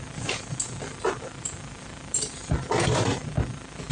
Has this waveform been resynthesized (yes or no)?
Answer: no